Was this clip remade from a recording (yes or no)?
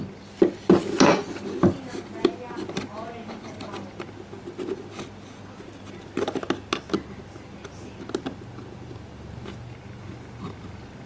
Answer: no